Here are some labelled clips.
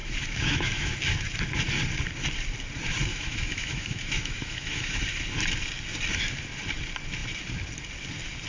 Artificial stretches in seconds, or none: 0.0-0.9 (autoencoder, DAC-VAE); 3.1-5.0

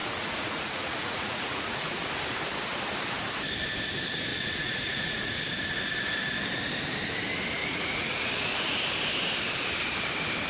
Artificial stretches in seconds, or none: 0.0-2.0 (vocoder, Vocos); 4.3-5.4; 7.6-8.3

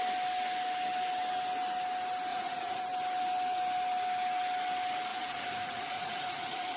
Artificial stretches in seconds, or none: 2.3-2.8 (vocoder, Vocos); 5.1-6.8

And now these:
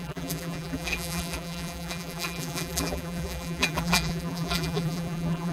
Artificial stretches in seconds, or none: 0.0-5.5 (vocoder, BigVGAN v2)

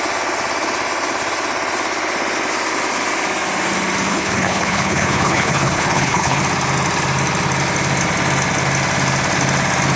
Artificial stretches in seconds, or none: 4.1-6.4 (codec, HILCodec)